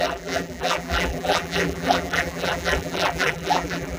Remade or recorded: remade